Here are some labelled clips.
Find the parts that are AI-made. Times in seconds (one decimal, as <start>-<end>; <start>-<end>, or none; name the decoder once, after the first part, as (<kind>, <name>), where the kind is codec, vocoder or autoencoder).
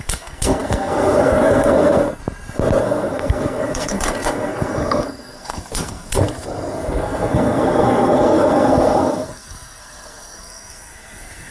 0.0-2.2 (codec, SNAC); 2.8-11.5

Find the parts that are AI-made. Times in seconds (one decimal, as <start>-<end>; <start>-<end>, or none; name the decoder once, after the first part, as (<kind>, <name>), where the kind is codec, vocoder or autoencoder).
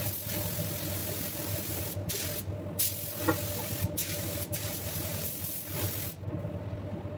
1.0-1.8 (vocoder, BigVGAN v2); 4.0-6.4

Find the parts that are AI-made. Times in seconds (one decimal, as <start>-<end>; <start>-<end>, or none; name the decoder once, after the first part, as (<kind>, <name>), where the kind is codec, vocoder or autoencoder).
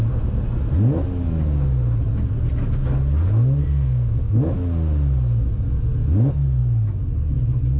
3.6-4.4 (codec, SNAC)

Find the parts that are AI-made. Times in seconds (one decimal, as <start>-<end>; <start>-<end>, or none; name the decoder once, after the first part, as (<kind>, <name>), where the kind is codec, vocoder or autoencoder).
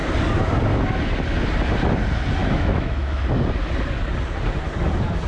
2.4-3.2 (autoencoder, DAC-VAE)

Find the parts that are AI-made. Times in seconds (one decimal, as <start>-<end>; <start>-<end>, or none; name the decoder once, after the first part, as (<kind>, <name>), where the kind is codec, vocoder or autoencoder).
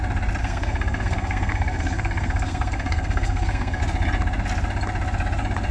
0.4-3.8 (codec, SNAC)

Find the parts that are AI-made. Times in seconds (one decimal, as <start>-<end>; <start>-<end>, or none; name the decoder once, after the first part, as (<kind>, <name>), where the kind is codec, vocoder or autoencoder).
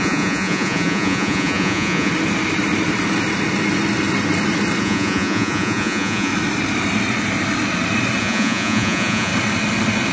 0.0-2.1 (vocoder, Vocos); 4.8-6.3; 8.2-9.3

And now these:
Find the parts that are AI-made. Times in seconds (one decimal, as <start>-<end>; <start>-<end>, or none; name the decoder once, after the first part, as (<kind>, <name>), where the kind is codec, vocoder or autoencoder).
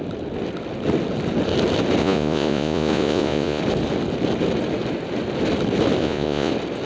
2.0-3.6 (vocoder, Vocos); 6.0-6.5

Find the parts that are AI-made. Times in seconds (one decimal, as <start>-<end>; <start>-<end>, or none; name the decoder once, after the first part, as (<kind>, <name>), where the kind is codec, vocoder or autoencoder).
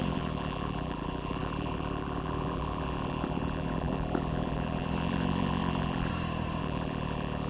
0.0-6.1 (vocoder, BigVGAN v2); 6.6-7.5